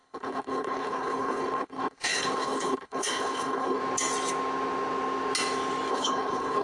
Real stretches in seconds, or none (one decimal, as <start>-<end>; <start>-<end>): 3.8-5.9